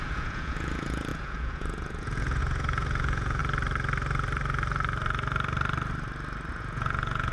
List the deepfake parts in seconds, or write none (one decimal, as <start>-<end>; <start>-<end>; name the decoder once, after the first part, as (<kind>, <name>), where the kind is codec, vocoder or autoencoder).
0.0-3.4 (vocoder, Vocos); 6.5-7.3

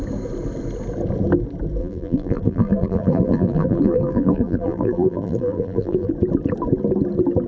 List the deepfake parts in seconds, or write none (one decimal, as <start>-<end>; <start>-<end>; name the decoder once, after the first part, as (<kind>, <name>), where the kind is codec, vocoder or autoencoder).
1.8-6.1 (vocoder, BigVGAN v2)

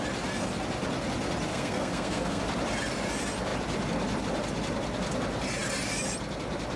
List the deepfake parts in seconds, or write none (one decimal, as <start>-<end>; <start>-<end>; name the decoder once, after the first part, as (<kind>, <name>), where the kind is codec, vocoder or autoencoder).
1.5-2.4 (codec, SNAC)

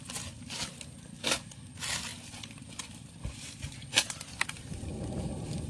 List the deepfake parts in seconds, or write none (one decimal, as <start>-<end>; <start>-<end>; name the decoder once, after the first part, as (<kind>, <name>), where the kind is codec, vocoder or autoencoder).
none

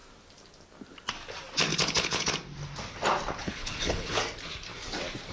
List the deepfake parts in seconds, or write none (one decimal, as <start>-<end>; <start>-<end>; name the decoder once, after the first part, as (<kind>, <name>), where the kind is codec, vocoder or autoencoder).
1.7-2.3 (codec, HILCodec); 3.4-4.2

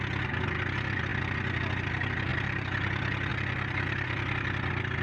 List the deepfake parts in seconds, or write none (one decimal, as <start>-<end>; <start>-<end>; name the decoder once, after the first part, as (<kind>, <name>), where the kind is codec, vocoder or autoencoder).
none

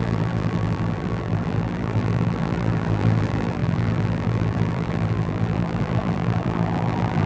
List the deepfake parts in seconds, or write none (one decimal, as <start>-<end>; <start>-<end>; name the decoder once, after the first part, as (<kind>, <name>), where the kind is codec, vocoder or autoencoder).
0.0-7.3 (vocoder, BigVGAN v2)

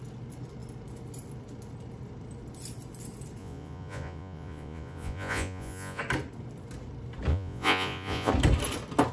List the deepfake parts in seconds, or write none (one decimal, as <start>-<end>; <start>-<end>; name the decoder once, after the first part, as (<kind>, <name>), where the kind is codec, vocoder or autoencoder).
3.4-6.0 (vocoder, Vocos); 7.3-8.3